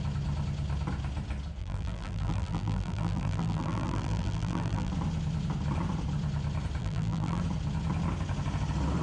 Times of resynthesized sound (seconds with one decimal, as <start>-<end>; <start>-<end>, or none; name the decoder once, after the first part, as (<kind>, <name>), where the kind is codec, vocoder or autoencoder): 1.6-4.9 (vocoder, BigVGAN v2); 6.8-7.4